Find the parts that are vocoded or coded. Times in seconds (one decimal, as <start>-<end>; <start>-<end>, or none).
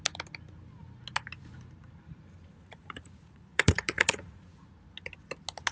2.5-4.7